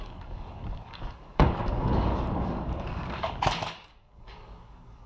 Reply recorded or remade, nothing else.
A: remade